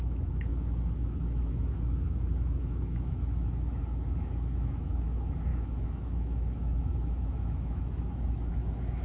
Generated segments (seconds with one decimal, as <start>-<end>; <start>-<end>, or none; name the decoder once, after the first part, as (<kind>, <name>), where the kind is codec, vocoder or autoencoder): 0.0-9.0 (autoencoder, DAC-VAE)